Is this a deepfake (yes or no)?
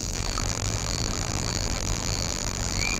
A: yes